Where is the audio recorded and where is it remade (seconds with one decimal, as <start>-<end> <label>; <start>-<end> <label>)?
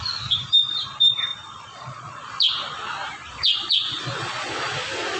0.0-1.3 recorded; 1.3-2.3 remade; 2.3-3.3 recorded; 3.3-4.5 remade; 4.5-5.2 recorded